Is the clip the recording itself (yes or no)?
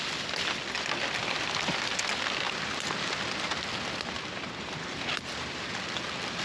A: yes